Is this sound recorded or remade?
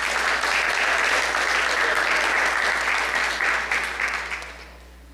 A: recorded